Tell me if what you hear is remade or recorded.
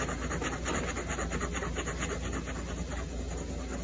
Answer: recorded